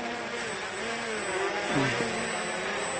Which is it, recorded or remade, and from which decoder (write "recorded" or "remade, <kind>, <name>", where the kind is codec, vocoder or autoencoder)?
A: recorded